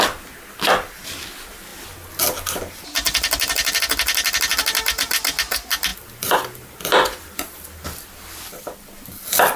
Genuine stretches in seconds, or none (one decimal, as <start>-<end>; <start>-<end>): 0.0-5.9; 8.8-9.6

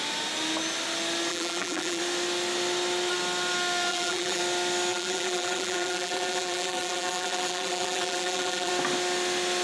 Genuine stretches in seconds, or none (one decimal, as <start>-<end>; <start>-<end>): 0.0-1.3; 2.0-3.9; 4.4-4.9; 8.7-9.6

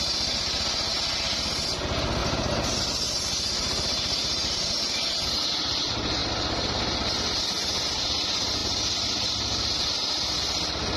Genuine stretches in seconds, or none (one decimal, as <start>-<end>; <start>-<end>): 0.0-2.2; 2.8-3.6; 4.5-6.2; 6.8-11.0

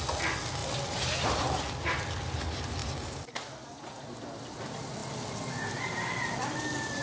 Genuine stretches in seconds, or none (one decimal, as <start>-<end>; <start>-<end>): 0.0-0.6; 2.1-2.8; 3.8-5.0; 6.6-7.0

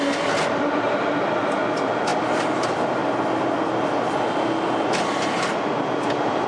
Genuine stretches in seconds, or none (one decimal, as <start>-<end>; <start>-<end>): 2.1-2.6; 3.0-5.4